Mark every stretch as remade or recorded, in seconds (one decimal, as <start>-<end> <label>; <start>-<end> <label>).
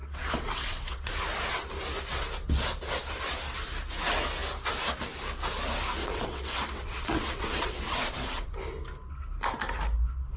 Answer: 0.0-1.1 remade; 1.1-6.0 recorded; 6.0-8.5 remade; 8.5-10.4 recorded